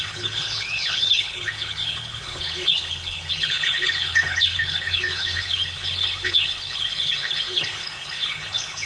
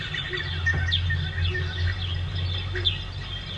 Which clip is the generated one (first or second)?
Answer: first